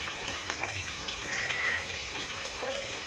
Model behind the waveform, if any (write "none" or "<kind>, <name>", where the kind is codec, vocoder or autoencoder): codec, SNAC